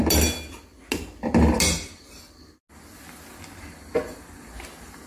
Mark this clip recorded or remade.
recorded